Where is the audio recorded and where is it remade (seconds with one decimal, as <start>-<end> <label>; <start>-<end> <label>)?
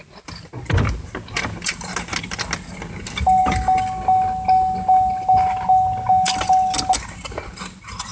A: 0.0-8.1 recorded